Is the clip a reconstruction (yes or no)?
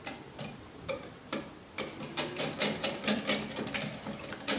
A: no